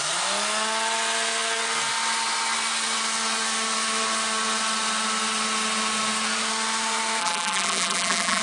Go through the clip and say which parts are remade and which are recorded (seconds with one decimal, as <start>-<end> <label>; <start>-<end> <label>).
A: 0.0-7.2 recorded; 7.2-8.4 remade